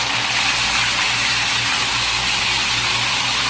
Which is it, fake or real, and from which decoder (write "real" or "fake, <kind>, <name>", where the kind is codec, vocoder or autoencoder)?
real